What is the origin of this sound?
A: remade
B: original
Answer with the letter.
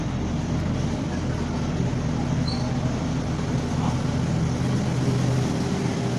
B